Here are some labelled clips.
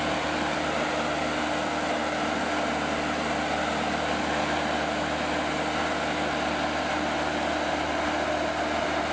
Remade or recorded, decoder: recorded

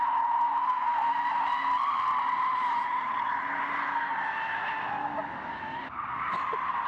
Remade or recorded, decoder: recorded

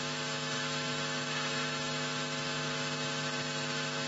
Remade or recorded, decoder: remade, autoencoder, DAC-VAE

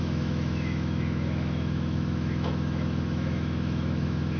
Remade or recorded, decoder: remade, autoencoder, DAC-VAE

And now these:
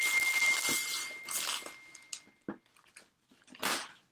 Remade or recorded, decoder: recorded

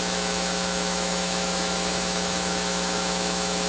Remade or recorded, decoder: remade, autoencoder, DAC-VAE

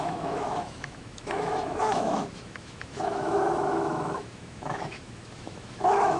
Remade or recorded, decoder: remade, autoencoder, DAC-VAE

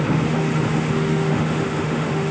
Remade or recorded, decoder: remade, autoencoder, DAC-VAE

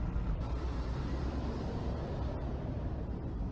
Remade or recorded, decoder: recorded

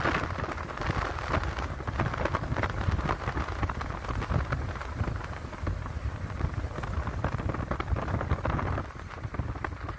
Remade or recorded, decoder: recorded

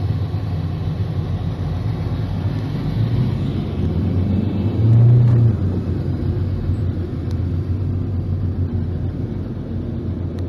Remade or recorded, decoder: recorded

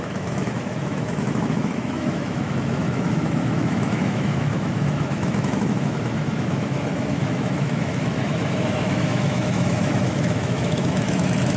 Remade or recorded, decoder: remade, autoencoder, DAC-VAE